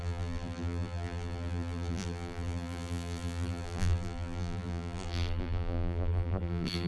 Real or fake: fake